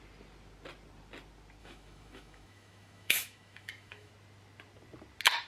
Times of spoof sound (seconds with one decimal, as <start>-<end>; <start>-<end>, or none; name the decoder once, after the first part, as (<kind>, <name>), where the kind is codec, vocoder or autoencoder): 1.6-4.1 (autoencoder, DAC-VAE)